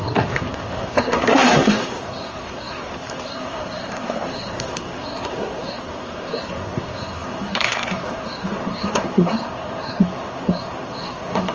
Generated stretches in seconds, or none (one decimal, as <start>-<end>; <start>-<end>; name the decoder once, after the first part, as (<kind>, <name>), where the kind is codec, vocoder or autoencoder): 0.0-11.5 (codec, SNAC)